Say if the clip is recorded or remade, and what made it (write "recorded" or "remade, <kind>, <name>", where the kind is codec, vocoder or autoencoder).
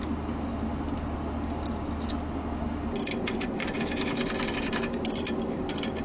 recorded